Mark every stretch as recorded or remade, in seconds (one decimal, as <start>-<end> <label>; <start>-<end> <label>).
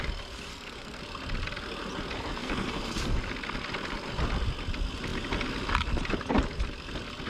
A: 0.0-0.5 recorded; 0.5-1.0 remade; 1.0-2.4 recorded; 2.4-3.0 remade; 3.0-7.3 recorded